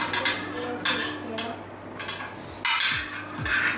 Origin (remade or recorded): recorded